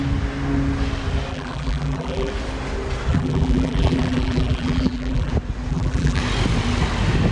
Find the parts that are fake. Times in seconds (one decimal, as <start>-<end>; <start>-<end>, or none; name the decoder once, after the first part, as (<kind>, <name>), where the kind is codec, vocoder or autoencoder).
1.3-2.3 (vocoder, BigVGAN v2); 3.1-5.3; 5.7-6.2